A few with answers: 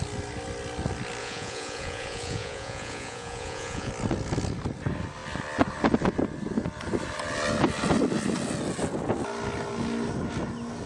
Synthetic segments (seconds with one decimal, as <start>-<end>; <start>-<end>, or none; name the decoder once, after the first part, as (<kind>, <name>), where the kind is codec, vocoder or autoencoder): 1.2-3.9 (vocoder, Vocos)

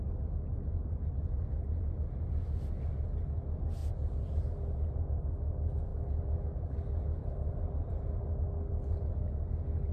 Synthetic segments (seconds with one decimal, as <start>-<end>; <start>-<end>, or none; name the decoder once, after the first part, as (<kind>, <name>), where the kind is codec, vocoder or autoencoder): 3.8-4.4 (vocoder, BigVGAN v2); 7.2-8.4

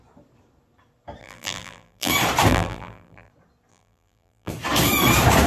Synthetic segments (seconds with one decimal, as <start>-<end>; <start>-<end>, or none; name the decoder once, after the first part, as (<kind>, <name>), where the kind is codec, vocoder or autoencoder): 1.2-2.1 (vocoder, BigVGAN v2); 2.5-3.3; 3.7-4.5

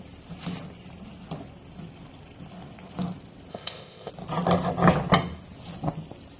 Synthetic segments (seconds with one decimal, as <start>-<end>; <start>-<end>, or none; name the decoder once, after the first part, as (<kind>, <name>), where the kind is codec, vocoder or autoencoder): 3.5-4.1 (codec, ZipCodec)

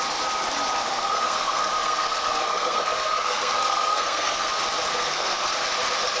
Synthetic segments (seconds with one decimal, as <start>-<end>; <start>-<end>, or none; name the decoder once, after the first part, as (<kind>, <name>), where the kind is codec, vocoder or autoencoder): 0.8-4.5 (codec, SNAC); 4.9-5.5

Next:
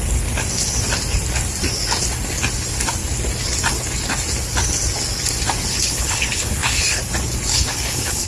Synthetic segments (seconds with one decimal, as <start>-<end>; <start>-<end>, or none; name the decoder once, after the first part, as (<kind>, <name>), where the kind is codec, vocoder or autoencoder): 5.7-7.0 (codec, HILCodec); 7.5-8.3